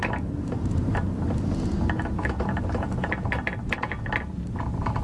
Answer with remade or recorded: recorded